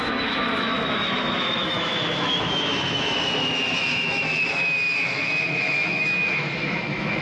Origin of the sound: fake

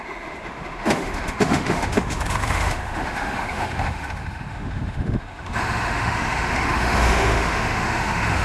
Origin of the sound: fake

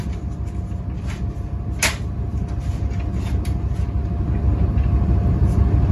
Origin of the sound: real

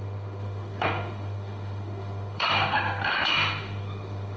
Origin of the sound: fake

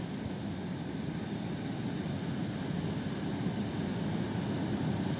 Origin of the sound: real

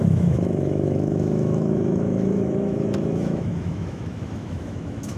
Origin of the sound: fake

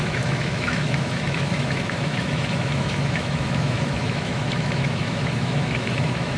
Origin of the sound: fake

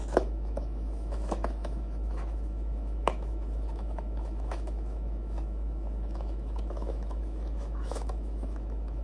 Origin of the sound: fake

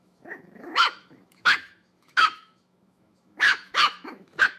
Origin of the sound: fake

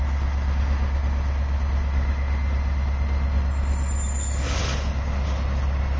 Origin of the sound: real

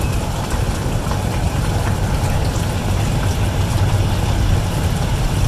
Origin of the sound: real